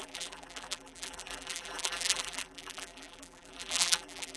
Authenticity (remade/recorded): remade